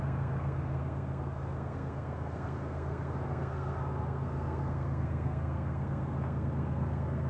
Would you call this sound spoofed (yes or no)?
yes